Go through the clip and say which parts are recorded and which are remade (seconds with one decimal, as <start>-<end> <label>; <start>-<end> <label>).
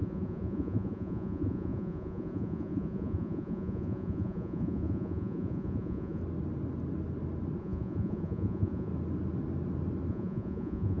0.0-6.2 remade; 6.2-7.6 recorded; 7.6-8.9 remade; 8.9-10.1 recorded; 10.1-11.0 remade